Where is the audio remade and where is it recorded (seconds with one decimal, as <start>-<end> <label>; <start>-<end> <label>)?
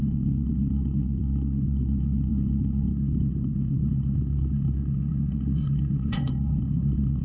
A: 0.0-7.2 remade